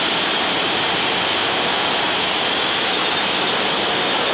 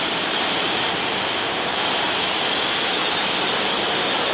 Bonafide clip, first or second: first